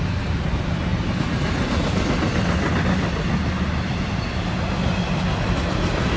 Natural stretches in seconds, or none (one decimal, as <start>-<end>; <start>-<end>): 0.0-6.2